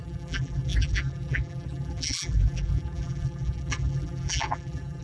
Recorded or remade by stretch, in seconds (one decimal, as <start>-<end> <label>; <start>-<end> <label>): 0.0-5.0 remade

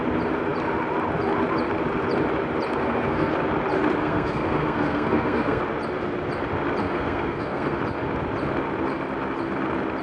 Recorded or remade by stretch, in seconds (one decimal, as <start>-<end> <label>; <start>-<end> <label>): 0.0-2.8 recorded; 2.8-3.3 remade; 3.3-4.0 recorded; 4.0-5.6 remade; 5.6-6.8 recorded; 6.8-7.8 remade; 7.8-10.0 recorded

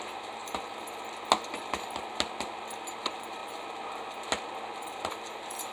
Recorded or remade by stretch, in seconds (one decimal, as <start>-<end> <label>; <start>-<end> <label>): 0.0-0.4 remade; 0.4-3.0 recorded; 3.0-3.4 remade; 3.4-4.8 recorded; 4.8-5.7 remade